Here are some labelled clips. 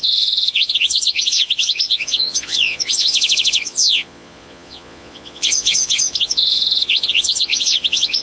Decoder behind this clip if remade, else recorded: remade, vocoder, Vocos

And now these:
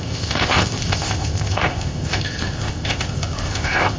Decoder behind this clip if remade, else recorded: remade, codec, ZipCodec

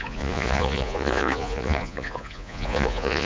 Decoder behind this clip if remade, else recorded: remade, vocoder, Vocos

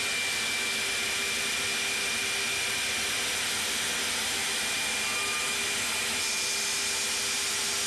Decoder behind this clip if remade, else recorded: recorded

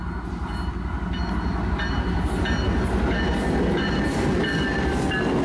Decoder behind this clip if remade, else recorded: recorded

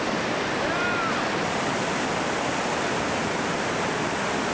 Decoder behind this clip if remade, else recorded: recorded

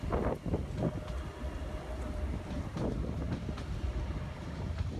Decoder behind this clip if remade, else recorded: recorded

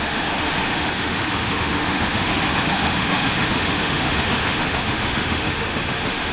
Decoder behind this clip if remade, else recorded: remade, autoencoder, DAC-VAE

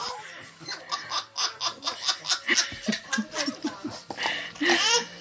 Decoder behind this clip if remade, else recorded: recorded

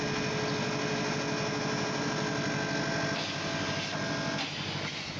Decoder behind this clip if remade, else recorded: recorded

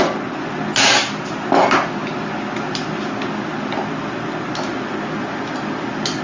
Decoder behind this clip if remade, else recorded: recorded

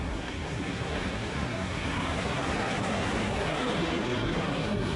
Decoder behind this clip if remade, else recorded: remade, codec, SNAC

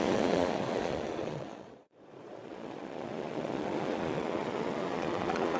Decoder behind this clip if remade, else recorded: remade, vocoder, Vocos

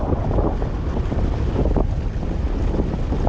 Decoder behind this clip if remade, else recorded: recorded